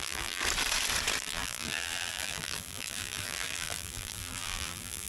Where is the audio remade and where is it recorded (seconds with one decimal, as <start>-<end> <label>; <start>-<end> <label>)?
0.0-0.4 remade; 0.4-1.2 recorded; 1.2-5.1 remade